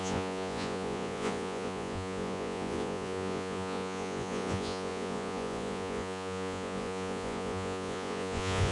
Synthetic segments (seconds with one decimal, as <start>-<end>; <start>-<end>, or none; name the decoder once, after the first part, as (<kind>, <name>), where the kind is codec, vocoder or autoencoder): 0.0-8.7 (vocoder, Vocos)